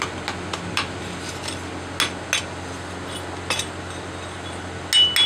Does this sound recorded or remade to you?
recorded